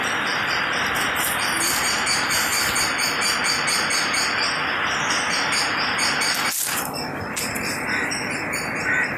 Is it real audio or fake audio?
real